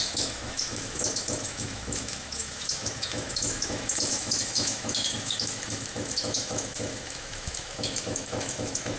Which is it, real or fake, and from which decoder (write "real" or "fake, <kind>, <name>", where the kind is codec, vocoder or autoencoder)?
fake, autoencoder, DAC-VAE